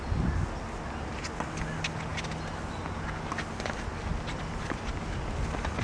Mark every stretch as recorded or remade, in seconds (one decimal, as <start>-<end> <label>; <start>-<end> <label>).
0.0-5.8 recorded